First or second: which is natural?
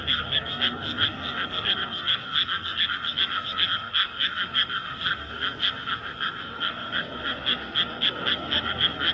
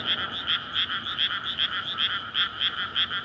second